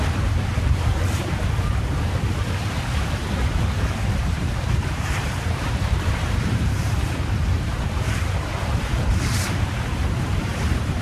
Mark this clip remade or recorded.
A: remade